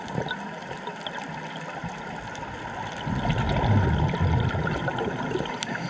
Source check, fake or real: real